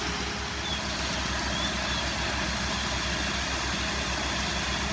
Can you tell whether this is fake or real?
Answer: real